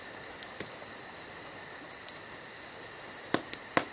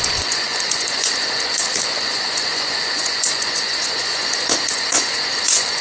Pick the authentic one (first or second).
first